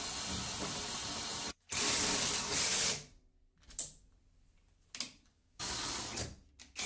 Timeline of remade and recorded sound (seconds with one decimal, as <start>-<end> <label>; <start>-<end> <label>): 0.0-5.3 recorded; 5.3-5.9 remade; 5.9-6.9 recorded